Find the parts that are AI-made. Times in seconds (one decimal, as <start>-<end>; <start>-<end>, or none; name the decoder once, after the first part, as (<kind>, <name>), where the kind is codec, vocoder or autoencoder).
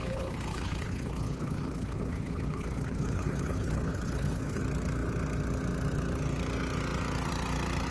0.0-4.6 (codec, HILCodec)